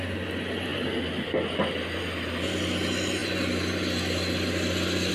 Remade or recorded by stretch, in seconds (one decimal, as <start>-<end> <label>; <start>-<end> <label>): 0.0-5.1 recorded